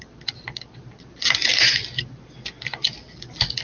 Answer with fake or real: real